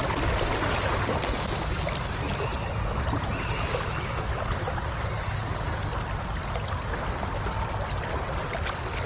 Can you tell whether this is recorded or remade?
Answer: recorded